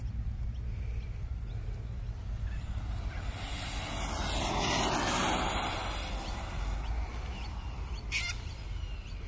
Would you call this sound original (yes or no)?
yes